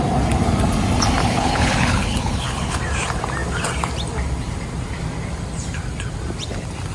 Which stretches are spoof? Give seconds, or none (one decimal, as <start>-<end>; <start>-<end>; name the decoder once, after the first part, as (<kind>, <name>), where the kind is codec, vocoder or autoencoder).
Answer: 1.2-2.8 (codec, HILCodec)